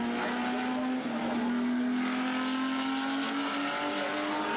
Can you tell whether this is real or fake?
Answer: real